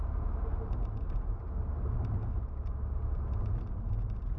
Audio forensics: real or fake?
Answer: real